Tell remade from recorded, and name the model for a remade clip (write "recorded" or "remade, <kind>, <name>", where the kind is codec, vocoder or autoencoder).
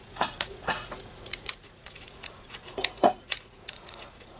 remade, vocoder, Vocos